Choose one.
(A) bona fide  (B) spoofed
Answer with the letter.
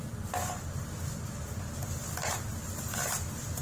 A